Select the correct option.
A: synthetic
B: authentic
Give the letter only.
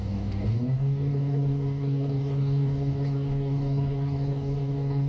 A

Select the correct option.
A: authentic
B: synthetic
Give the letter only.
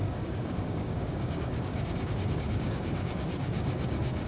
B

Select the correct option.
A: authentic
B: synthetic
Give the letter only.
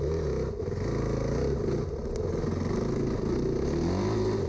A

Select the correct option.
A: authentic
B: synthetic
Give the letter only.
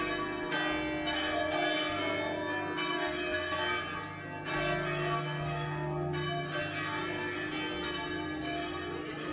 A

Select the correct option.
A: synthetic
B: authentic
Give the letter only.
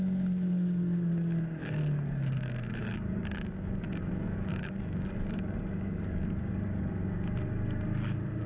A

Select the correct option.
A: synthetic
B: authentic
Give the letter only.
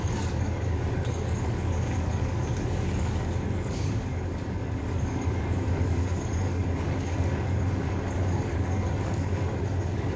A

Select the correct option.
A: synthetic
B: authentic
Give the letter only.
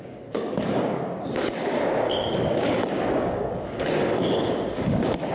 A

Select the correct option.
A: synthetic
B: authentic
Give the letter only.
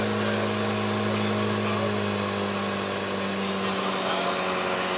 B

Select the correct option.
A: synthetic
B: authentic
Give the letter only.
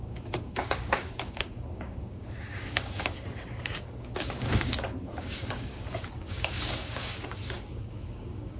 A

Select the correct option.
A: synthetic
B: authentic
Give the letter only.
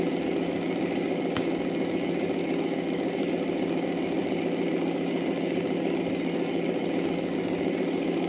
A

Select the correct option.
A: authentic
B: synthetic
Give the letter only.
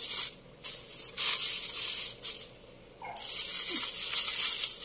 A